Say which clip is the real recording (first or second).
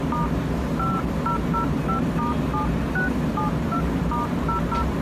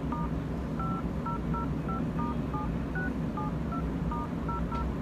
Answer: second